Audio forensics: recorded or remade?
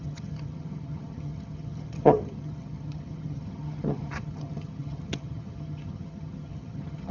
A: remade